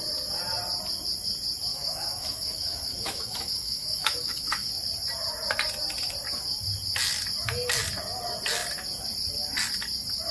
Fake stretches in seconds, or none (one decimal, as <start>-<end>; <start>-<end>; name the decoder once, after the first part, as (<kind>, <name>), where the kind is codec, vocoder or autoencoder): 1.7-4.7 (autoencoder, DAC-VAE)

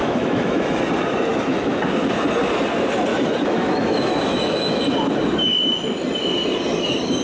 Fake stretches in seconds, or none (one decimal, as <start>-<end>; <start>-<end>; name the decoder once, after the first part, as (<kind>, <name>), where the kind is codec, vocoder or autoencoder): 0.0-0.8 (autoencoder, DAC-VAE); 1.3-1.8; 3.1-4.8

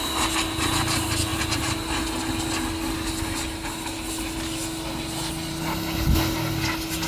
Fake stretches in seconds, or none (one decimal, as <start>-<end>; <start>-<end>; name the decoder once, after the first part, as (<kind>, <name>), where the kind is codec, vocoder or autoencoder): none

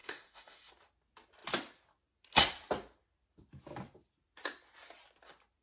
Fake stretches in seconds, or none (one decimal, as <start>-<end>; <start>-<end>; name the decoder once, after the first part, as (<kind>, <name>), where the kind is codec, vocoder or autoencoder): 0.0-0.7 (autoencoder, DAC-VAE)

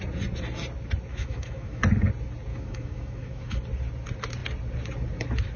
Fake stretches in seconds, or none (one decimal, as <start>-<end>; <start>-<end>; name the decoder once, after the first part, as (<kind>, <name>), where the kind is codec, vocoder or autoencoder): 1.1-1.8 (autoencoder, DAC-VAE); 2.5-3.6

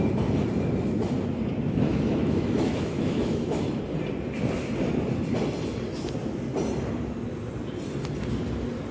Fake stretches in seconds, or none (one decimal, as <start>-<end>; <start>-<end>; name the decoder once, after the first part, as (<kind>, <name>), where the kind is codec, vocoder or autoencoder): 1.9-3.8 (autoencoder, DAC-VAE)

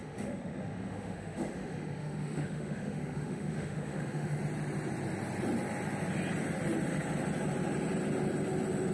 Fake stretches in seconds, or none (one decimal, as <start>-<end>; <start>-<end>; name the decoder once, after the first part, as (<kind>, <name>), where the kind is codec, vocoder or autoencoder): 0.0-4.4 (autoencoder, DAC-VAE)

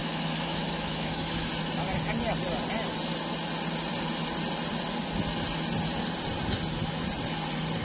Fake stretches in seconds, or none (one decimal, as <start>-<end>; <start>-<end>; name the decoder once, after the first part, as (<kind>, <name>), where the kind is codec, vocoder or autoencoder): 0.0-1.5 (autoencoder, DAC-VAE)